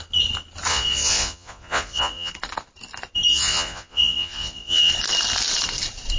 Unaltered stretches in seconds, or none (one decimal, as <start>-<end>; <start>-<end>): 0.0-0.7; 2.3-3.3; 4.9-6.2